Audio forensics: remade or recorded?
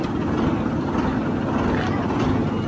recorded